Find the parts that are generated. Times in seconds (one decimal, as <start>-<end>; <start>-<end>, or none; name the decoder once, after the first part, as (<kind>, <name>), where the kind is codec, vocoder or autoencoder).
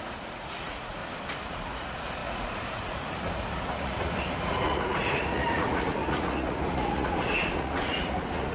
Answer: 0.0-1.0 (vocoder, Vocos); 1.5-8.5